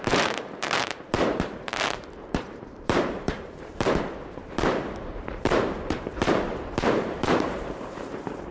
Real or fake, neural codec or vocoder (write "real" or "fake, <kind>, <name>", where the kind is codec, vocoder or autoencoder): fake, vocoder, BigVGAN v2